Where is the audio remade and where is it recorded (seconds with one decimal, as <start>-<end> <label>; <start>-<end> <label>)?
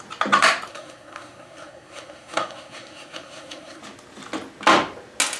0.0-0.7 recorded; 0.7-3.8 remade; 3.8-5.4 recorded